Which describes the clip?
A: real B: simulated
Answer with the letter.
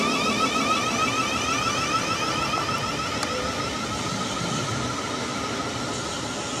A